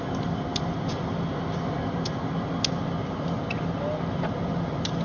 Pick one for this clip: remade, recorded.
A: recorded